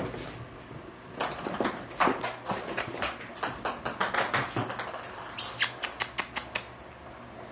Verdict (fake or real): real